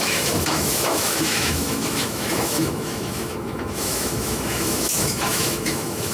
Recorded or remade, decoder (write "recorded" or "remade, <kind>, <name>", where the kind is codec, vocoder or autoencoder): remade, autoencoder, DAC-VAE